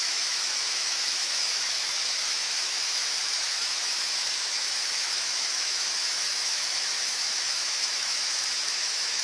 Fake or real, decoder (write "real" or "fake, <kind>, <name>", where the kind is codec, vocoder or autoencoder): fake, autoencoder, DAC-VAE